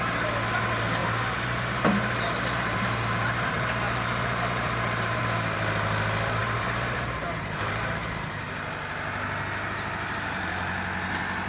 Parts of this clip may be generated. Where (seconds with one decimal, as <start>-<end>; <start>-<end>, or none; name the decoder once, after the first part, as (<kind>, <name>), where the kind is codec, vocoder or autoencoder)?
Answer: 1.0-5.2 (vocoder, BigVGAN v2); 6.4-8.3